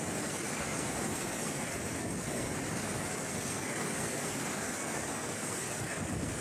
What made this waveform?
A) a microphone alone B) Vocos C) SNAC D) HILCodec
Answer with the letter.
C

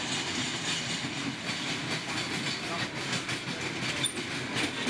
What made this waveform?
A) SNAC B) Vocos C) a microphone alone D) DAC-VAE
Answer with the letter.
C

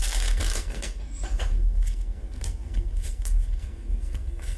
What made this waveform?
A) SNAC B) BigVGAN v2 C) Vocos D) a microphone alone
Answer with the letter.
A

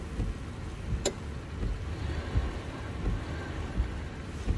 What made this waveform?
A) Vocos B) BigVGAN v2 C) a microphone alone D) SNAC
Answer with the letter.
C